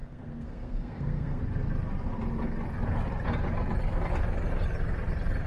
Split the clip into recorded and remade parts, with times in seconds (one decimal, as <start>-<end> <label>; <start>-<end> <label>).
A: 0.0-1.4 remade; 1.4-5.5 recorded